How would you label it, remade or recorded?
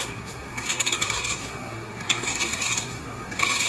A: remade